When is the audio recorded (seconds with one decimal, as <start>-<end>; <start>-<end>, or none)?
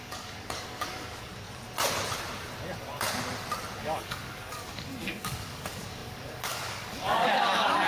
1.3-3.8